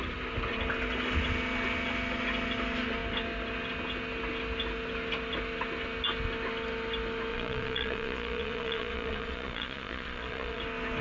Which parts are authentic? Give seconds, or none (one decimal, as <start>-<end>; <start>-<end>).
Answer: 0.0-7.3; 10.6-11.0